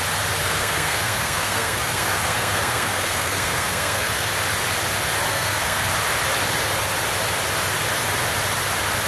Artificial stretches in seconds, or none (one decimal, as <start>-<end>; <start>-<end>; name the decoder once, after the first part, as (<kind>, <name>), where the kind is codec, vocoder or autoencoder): 0.4-4.3 (codec, SNAC); 5.3-5.9